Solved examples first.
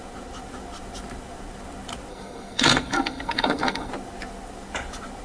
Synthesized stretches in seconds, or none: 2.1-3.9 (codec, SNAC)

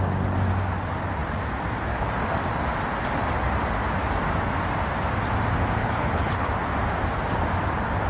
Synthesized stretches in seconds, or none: 5.8-6.5 (codec, HILCodec)

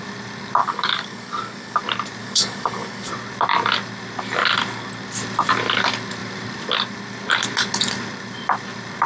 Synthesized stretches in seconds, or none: 0.6-1.8 (codec, DAC); 2.2-3.1